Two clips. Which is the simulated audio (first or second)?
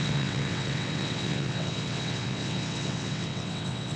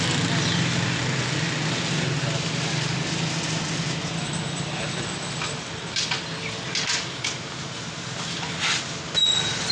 first